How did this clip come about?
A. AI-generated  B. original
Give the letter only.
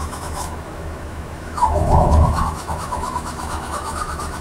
A